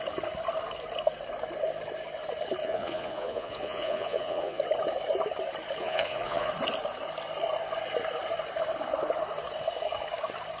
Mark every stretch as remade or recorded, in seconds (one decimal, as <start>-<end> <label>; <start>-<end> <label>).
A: 0.0-2.6 recorded; 2.6-4.6 remade; 4.6-5.8 recorded; 5.8-6.5 remade; 6.5-10.6 recorded